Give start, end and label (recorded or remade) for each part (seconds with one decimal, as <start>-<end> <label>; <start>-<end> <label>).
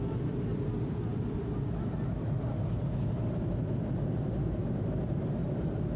0.0-6.0 recorded